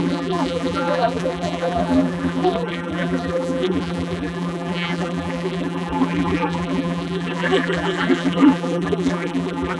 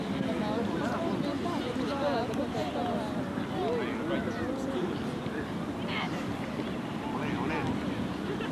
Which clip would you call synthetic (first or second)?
first